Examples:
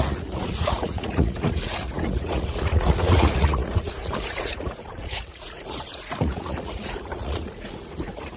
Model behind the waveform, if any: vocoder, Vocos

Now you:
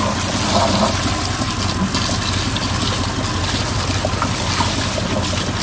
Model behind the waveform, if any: none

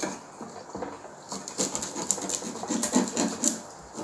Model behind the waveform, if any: none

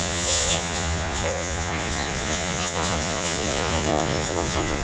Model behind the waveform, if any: vocoder, Vocos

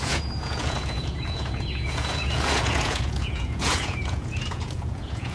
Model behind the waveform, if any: vocoder, Vocos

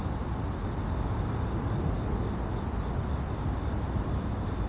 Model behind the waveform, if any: none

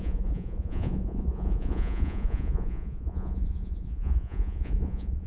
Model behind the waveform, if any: vocoder, Vocos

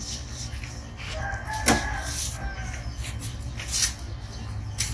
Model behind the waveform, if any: none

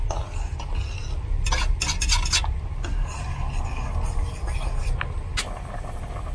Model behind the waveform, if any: none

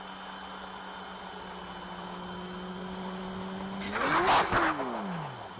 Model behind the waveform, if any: none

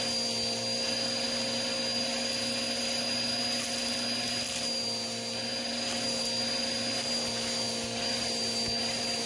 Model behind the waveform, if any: none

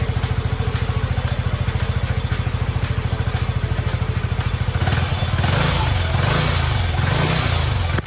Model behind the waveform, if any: none